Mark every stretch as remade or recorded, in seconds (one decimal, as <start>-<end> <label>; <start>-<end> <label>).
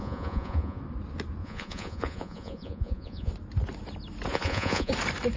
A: 0.0-0.8 remade; 0.8-1.4 recorded; 1.4-3.3 remade; 3.3-4.3 recorded; 4.3-4.9 remade; 4.9-5.4 recorded